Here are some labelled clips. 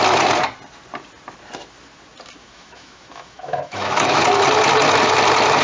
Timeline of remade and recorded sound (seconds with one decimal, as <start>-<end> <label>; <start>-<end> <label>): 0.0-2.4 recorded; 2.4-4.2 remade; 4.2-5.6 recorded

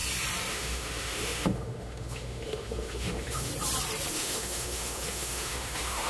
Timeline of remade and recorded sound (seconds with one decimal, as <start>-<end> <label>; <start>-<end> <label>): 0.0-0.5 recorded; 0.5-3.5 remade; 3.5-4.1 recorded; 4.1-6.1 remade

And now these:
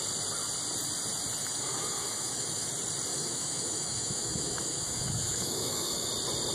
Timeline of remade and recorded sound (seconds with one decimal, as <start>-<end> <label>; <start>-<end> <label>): 0.0-1.4 recorded; 1.4-2.7 remade; 2.7-3.1 recorded; 3.1-6.1 remade; 6.1-6.5 recorded